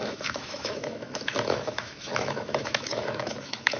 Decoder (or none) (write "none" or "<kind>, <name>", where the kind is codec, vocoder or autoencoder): autoencoder, DAC-VAE